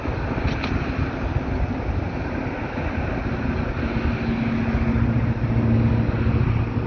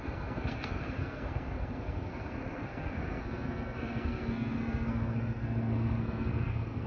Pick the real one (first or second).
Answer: first